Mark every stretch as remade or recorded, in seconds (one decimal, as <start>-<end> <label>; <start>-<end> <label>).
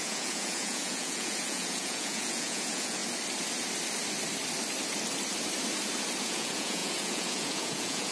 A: 0.0-3.0 remade; 3.0-6.2 recorded; 6.2-8.1 remade